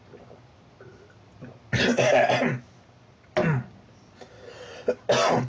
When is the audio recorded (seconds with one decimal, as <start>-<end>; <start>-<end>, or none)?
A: 0.0-5.5